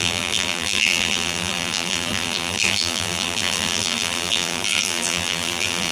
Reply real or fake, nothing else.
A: fake